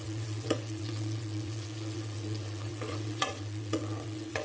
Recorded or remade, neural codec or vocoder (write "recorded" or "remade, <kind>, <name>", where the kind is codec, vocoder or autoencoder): remade, vocoder, WaveNeXt